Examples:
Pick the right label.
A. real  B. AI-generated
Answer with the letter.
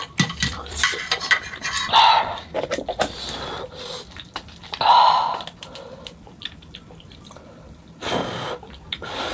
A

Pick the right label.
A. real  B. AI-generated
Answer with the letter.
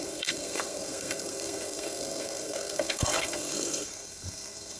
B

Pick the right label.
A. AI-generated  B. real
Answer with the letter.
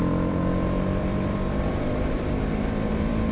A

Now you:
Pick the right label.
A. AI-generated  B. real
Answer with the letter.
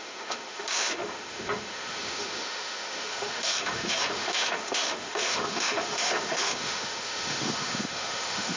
A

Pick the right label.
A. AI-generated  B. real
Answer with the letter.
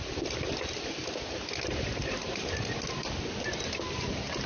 B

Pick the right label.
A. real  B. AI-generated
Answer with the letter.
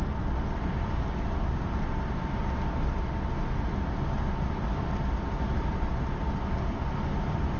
A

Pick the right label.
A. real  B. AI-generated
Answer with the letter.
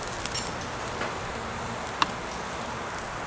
A